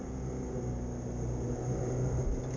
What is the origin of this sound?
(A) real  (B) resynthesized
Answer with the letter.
A